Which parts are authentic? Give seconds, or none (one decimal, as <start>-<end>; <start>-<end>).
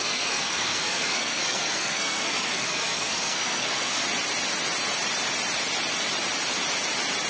4.0-7.3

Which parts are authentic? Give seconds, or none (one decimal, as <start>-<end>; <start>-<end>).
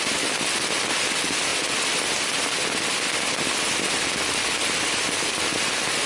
0.0-6.1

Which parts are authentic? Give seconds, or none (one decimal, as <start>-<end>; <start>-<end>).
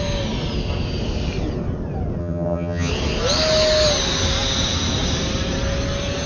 0.0-2.2; 2.9-6.3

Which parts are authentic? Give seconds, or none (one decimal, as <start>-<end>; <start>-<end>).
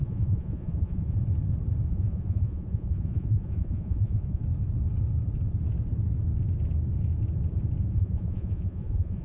1.2-1.9; 4.4-7.8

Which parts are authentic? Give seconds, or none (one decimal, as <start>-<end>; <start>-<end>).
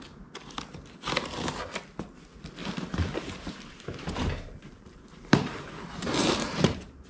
0.0-2.6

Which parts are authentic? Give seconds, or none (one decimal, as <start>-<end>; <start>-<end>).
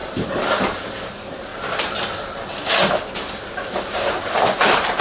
1.5-3.1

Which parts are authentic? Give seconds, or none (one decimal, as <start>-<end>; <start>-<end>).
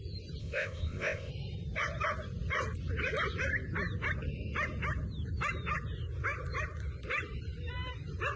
0.0-0.4; 1.3-8.4